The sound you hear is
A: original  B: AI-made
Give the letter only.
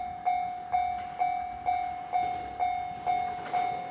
A